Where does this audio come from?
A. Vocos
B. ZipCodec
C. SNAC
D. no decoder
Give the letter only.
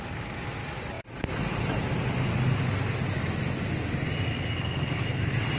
D